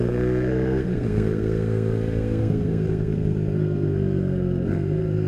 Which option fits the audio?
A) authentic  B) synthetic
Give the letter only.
B